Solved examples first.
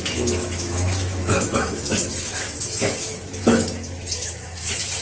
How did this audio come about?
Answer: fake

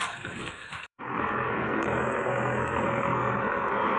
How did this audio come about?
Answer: fake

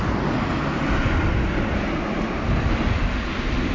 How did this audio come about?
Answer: real